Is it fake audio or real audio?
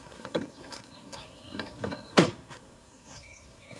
fake